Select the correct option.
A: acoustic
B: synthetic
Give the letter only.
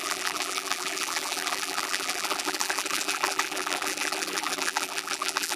B